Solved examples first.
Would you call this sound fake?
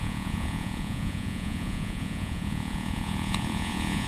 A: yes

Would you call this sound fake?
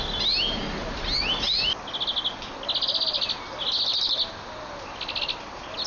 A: no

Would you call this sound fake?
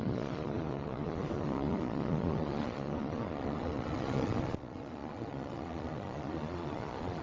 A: yes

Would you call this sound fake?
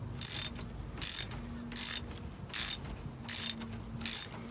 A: no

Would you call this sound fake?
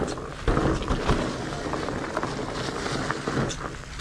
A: no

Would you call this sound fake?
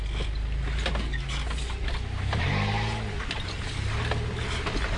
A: no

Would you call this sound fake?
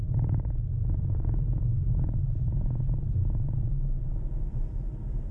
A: no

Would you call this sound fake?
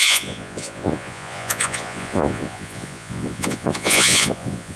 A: yes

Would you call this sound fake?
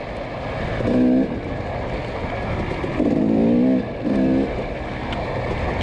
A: no